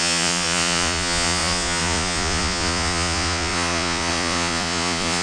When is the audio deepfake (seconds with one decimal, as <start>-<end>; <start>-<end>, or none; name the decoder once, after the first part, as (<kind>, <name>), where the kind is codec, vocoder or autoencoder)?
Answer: 0.0-5.2 (vocoder, Vocos)